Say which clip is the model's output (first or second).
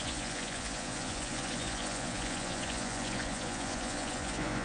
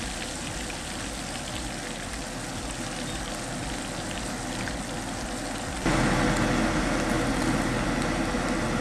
first